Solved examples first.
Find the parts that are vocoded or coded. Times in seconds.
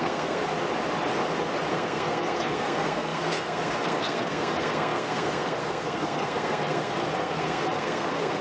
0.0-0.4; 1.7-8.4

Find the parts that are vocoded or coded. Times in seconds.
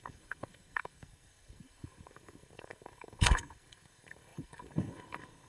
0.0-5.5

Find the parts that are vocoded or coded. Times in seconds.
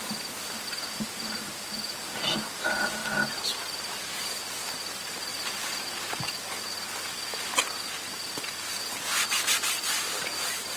none